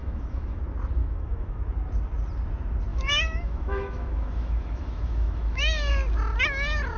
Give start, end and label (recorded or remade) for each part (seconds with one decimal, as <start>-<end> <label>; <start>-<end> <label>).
0.0-0.6 remade; 0.6-1.0 recorded; 1.0-1.6 remade; 1.6-2.9 recorded; 2.9-5.9 remade; 5.9-7.0 recorded